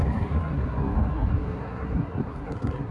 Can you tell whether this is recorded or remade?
remade